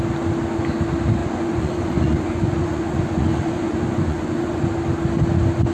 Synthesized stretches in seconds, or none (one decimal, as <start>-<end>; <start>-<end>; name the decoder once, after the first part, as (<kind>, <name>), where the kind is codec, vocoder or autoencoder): 1.2-4.6 (vocoder, Vocos)